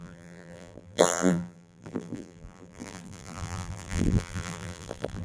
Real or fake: fake